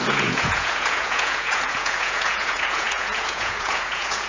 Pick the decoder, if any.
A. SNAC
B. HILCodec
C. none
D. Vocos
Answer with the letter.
D